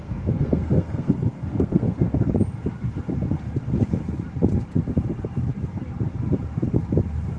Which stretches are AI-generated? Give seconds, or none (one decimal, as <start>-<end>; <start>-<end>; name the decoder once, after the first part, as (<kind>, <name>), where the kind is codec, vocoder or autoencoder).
0.0-2.3 (codec, SNAC)